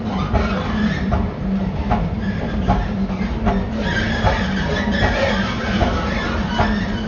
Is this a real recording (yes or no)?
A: yes